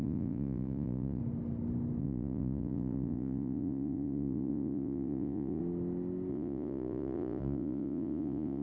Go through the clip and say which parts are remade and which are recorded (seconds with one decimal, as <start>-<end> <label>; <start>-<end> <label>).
0.0-1.2 remade; 1.2-2.0 recorded; 2.0-5.6 remade; 5.6-6.3 recorded; 6.3-8.6 remade